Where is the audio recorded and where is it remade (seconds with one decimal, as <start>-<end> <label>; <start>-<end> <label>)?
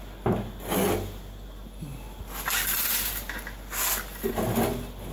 0.0-5.1 recorded